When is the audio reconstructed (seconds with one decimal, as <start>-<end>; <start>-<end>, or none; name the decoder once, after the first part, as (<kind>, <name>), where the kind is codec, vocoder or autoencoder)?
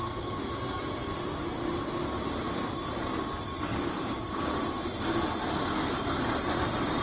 3.7-4.6 (codec, DAC)